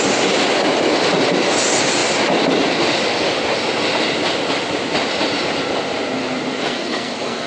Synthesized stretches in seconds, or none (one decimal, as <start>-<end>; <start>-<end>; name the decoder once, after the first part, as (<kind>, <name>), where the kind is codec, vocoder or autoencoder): 6.5-7.5 (codec, SNAC)